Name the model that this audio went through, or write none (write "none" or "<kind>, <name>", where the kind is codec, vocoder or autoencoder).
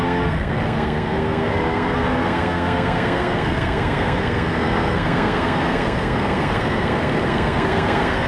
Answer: codec, SNAC